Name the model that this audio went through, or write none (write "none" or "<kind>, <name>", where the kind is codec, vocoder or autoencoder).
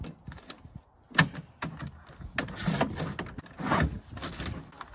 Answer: none